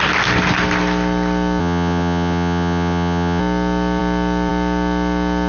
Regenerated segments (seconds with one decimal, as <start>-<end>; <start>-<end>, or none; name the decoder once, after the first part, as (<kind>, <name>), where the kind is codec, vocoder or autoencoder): 1.6-3.4 (vocoder, WaveNeXt)